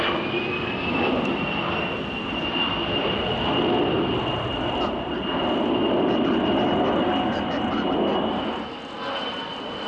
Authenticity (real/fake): real